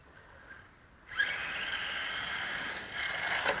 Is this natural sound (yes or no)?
yes